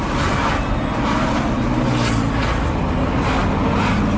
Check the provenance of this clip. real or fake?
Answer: real